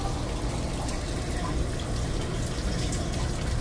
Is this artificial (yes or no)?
no